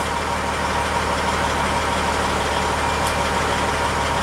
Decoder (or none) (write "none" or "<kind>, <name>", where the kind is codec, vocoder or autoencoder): none